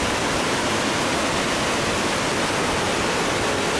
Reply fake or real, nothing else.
real